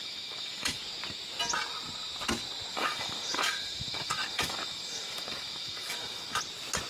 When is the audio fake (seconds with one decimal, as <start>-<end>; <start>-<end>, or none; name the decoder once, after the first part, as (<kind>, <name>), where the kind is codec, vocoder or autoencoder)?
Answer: 0.0-0.8 (autoencoder, DAC-VAE); 2.7-6.4

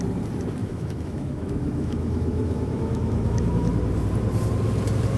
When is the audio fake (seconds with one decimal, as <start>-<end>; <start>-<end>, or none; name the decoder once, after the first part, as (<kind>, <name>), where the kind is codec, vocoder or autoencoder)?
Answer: 0.6-3.7 (autoencoder, DAC-VAE)

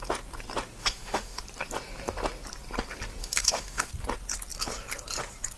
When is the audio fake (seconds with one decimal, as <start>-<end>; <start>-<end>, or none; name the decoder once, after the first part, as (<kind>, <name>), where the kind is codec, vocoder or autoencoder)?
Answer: 0.8-1.4 (autoencoder, DAC-VAE); 3.2-3.9

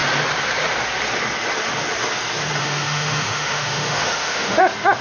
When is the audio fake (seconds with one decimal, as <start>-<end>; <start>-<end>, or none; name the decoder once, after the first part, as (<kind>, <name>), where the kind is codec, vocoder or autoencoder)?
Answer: 2.6-4.6 (autoencoder, DAC-VAE)

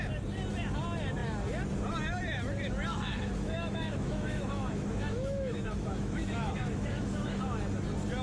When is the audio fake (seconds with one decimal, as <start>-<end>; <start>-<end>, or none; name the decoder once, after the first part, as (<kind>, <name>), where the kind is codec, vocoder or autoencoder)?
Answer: 2.9-7.4 (autoencoder, DAC-VAE)

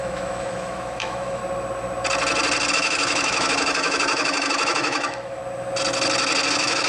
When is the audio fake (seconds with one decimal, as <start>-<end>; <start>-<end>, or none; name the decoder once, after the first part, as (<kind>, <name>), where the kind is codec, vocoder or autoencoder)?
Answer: 0.0-1.4 (autoencoder, DAC-VAE); 2.7-5.4; 6.5-6.9